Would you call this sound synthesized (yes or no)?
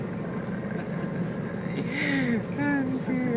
no